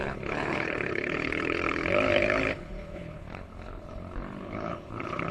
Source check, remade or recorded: remade